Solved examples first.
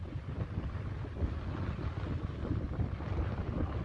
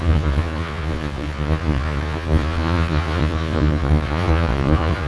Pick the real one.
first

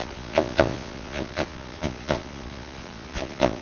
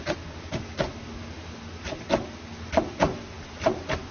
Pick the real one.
second